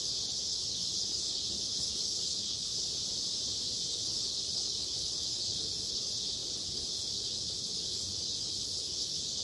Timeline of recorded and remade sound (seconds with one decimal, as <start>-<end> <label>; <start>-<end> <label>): 0.0-2.7 remade; 2.7-3.9 recorded; 3.9-9.4 remade